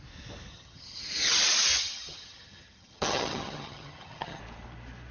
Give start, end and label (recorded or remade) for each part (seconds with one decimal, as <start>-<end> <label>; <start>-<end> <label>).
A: 0.0-0.5 recorded; 0.5-1.0 remade; 1.0-1.7 recorded; 1.7-4.4 remade; 4.4-5.1 recorded

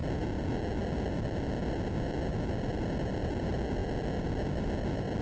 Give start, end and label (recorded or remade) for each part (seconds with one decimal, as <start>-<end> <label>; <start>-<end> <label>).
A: 0.0-5.2 recorded

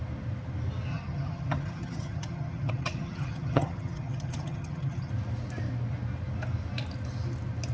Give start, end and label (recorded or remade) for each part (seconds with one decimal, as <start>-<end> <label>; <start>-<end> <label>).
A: 0.0-0.9 recorded; 0.9-5.1 remade; 5.1-7.7 recorded